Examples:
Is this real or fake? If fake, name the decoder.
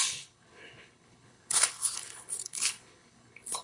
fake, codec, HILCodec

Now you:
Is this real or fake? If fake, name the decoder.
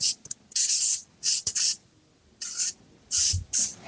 real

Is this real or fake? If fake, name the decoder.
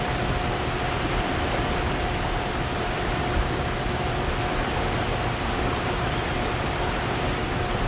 real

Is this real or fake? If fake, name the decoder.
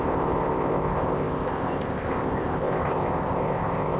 fake, codec, ZipCodec